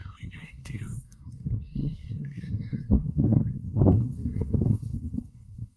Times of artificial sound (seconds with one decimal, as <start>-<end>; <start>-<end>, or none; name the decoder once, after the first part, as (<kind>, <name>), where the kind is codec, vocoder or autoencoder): 0.0-5.8 (codec, SNAC)